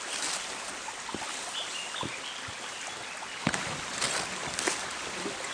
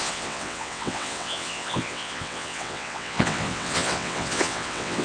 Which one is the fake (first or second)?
second